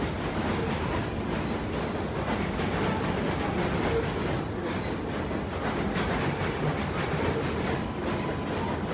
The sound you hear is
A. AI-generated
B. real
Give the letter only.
B